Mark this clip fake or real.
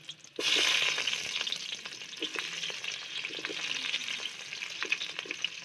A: real